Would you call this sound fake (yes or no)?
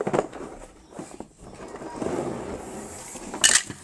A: no